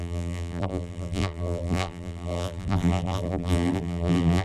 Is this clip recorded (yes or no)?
no